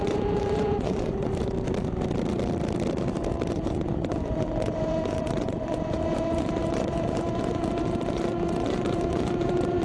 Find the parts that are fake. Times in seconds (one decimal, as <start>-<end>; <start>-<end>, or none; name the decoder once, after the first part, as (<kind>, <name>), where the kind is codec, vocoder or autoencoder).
0.0-1.3 (vocoder, Vocos); 3.5-9.8